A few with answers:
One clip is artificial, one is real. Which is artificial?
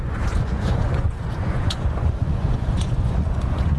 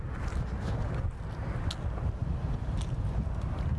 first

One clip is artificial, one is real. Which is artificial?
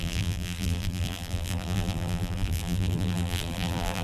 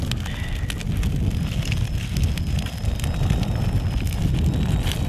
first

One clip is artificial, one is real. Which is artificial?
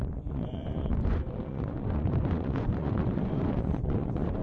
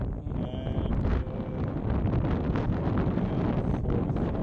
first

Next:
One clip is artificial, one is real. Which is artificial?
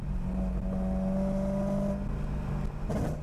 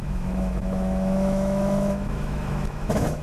second